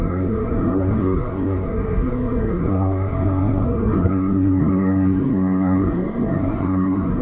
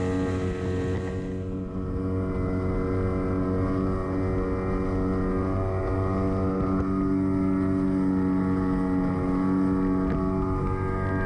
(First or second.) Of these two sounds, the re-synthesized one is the first